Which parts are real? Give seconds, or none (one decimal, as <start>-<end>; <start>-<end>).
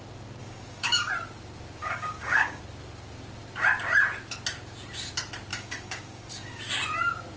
0.0-0.4; 1.1-1.8; 2.6-5.5; 6.6-7.4